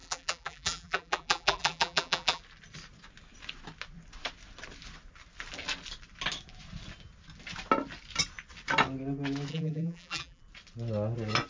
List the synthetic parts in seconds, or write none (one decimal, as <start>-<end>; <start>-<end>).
0.0-2.4; 9.5-10.4